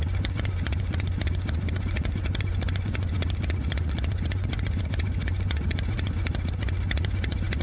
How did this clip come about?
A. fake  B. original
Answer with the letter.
A